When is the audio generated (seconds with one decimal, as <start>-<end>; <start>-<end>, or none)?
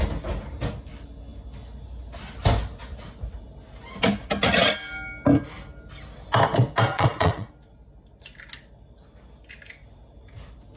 6.9-7.5